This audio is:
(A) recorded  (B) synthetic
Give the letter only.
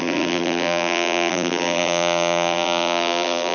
B